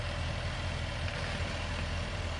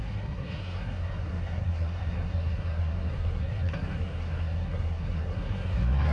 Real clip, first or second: first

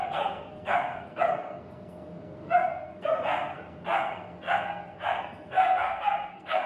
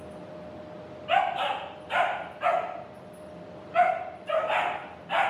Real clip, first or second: second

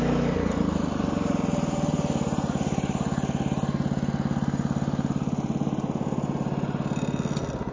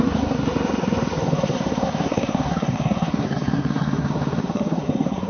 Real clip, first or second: first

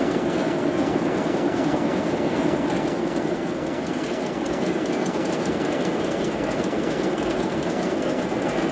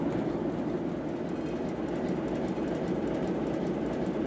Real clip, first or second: second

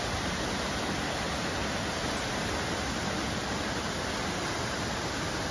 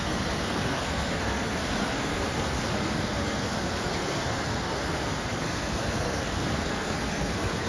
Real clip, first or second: first